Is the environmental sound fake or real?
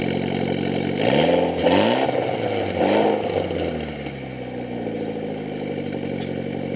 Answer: real